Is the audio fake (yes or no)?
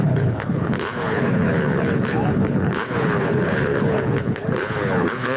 yes